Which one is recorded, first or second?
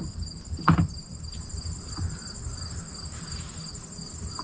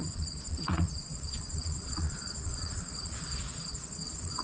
first